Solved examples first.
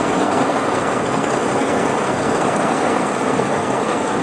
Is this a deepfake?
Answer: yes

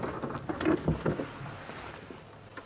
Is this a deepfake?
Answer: no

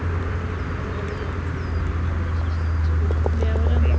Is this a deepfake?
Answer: no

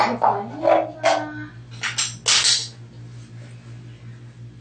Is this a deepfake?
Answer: no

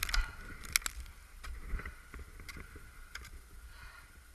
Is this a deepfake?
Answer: no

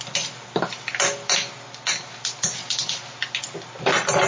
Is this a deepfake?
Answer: no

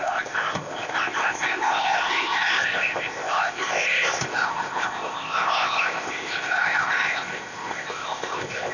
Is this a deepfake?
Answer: yes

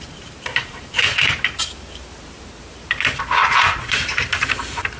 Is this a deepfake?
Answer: yes